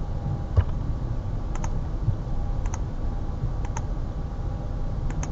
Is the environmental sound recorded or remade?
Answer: recorded